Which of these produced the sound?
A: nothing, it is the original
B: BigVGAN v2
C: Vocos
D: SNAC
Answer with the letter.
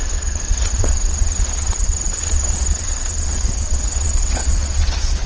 C